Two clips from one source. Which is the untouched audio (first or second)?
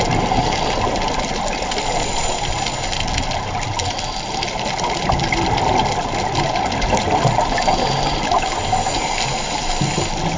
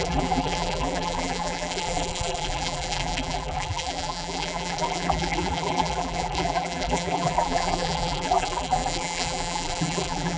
first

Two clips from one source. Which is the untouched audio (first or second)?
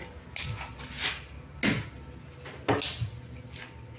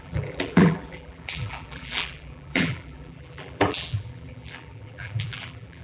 first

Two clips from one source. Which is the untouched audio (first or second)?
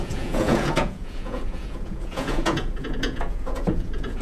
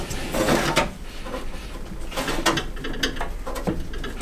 second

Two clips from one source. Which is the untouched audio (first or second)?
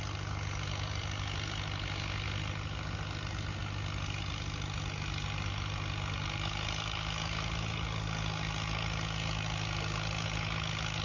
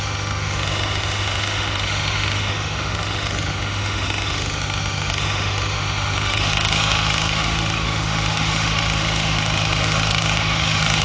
first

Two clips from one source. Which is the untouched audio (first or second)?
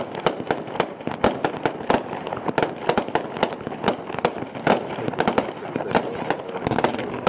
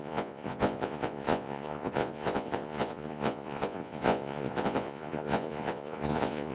first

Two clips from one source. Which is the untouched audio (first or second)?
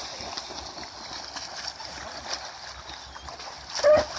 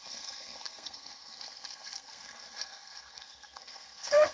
first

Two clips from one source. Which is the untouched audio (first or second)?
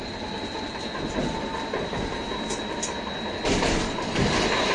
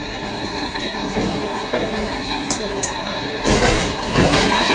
first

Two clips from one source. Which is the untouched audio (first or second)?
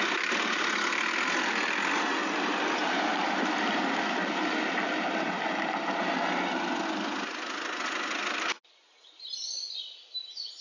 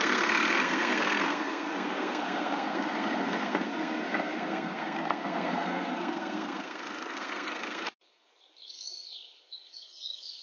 first